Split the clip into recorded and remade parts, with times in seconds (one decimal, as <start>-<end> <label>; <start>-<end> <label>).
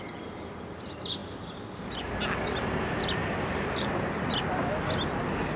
0.0-3.2 recorded; 3.2-4.3 remade; 4.3-5.6 recorded